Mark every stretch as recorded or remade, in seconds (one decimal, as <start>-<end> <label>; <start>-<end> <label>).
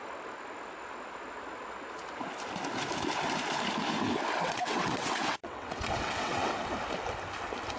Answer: 0.0-4.3 recorded; 4.3-6.7 remade; 6.7-7.8 recorded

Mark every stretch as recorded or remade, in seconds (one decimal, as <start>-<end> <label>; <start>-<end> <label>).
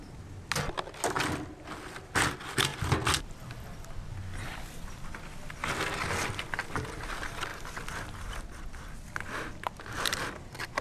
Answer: 0.0-10.8 recorded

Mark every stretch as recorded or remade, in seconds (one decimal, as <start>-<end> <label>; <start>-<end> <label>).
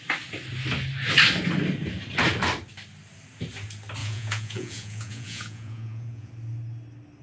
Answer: 0.0-4.0 recorded; 4.0-6.3 remade; 6.3-7.2 recorded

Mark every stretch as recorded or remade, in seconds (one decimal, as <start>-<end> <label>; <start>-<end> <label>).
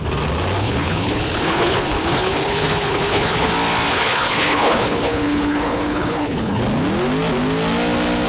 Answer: 0.0-0.6 recorded; 0.6-3.5 remade; 3.5-3.9 recorded; 3.9-6.6 remade; 6.6-8.3 recorded